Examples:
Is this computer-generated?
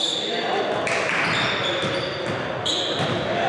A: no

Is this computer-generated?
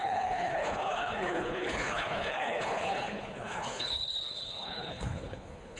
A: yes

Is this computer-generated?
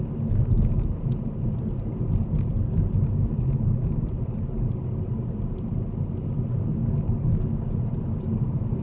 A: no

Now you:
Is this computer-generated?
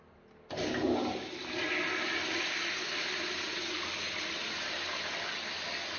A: no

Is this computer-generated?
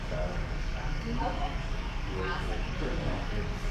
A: yes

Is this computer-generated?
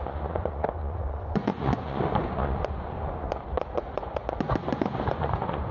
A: yes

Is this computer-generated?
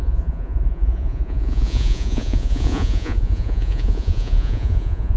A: yes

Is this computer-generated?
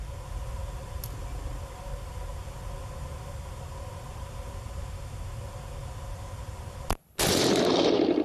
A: no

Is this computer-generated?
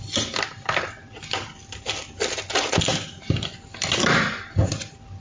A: no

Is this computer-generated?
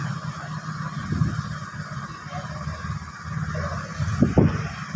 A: no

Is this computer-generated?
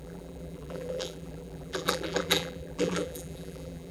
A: yes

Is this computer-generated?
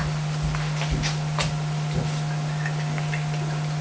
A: no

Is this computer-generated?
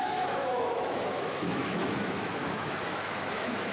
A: yes